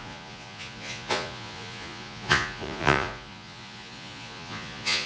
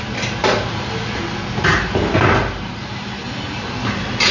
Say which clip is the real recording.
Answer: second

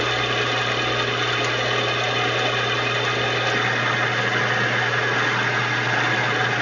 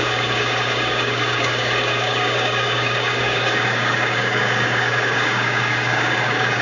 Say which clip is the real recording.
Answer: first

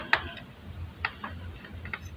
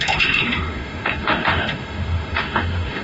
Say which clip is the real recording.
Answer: first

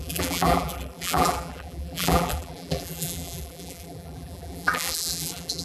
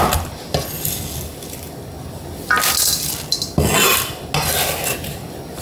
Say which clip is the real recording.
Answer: second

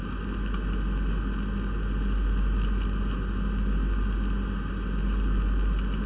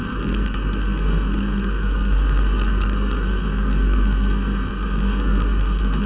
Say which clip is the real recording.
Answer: first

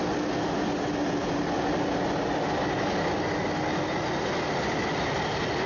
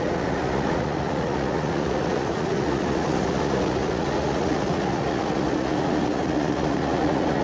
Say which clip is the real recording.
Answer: first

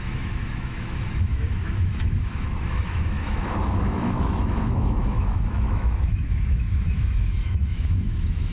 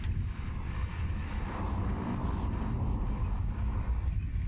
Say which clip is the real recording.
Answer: second